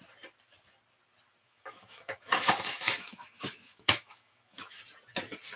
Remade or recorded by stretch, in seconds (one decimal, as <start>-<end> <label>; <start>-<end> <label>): 0.0-1.4 recorded; 1.4-4.8 remade; 4.8-5.6 recorded